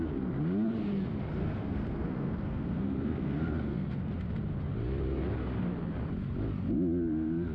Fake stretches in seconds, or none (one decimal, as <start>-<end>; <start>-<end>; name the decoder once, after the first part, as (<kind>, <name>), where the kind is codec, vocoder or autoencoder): 1.4-4.1 (codec, SNAC)